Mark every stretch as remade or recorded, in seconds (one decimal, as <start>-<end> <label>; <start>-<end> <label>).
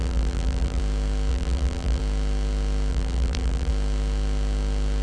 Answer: 0.0-0.8 remade; 0.8-1.3 recorded; 1.3-2.0 remade; 2.0-2.9 recorded; 2.9-3.7 remade; 3.7-5.0 recorded